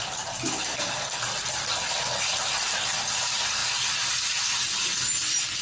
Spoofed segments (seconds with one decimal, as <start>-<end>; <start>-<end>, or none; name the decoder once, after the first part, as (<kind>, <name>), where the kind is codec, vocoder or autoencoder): 0.5-1.2 (codec, SNAC)